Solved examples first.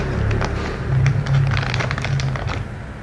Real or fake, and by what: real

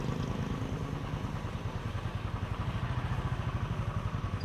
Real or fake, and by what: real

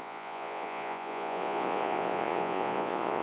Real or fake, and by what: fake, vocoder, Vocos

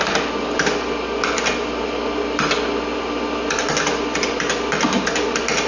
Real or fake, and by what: real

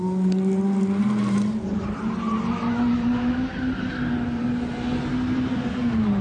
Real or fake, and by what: real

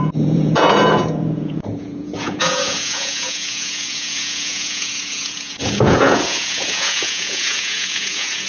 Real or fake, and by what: fake, vocoder, Vocos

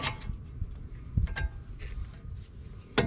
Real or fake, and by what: real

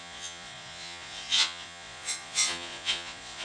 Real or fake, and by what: fake, vocoder, Vocos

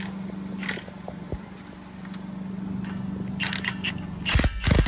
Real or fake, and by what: real